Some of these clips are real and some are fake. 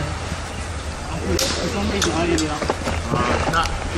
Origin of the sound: real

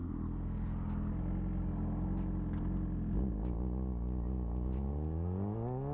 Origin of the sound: real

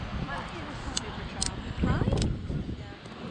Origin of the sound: real